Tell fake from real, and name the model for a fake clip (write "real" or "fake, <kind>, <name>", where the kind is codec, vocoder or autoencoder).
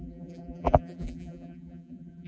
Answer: fake, vocoder, BigVGAN v2